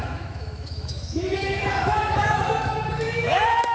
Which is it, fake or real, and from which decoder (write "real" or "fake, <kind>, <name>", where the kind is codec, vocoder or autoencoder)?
fake, autoencoder, DAC-VAE